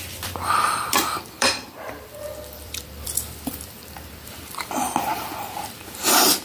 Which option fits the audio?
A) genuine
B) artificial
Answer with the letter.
B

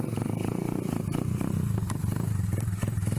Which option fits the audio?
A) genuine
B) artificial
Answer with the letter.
A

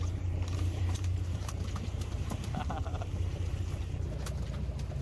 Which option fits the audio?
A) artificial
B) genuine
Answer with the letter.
A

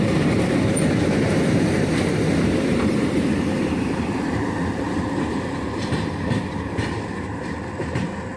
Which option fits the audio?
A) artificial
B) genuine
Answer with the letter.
A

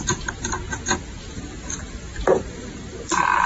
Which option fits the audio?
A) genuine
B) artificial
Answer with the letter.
B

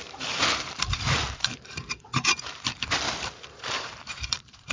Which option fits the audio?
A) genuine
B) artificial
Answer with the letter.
B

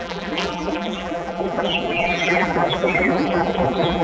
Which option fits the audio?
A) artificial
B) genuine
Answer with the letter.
A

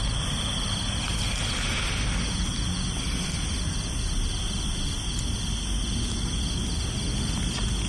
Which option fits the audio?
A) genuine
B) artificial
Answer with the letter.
A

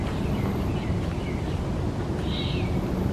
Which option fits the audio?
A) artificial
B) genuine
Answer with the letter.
B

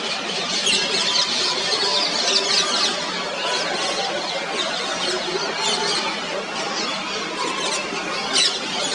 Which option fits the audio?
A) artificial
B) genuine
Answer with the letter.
B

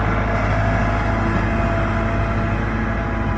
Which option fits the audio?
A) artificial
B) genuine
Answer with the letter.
B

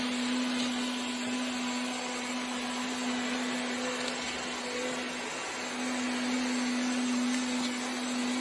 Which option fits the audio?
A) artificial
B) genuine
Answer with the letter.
B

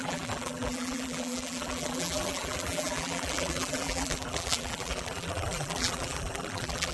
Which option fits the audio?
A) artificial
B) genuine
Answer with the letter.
A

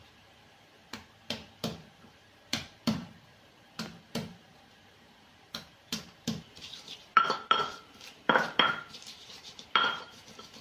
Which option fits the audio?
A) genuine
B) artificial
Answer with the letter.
B